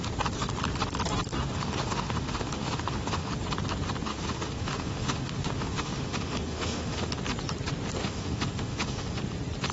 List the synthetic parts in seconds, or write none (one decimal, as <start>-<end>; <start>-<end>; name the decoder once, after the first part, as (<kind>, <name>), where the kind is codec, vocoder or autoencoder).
1.3-3.3 (autoencoder, DAC-VAE); 4.1-7.1; 8.0-9.2